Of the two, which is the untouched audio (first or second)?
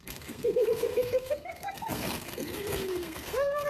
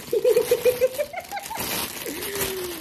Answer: second